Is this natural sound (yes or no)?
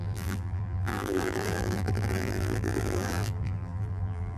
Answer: no